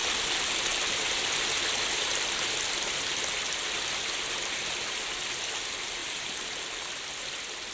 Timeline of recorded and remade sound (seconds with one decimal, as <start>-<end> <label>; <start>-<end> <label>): 0.0-6.0 recorded; 6.0-6.6 remade; 6.6-7.7 recorded